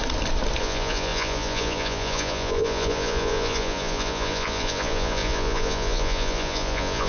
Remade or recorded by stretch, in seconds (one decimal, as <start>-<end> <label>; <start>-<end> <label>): 0.0-0.6 recorded; 0.6-7.1 remade